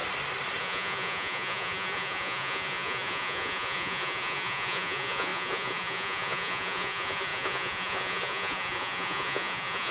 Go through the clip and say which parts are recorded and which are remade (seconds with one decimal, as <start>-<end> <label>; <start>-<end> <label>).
0.0-0.6 recorded; 0.6-9.9 remade